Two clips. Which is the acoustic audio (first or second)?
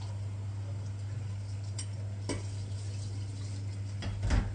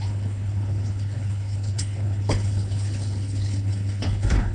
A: first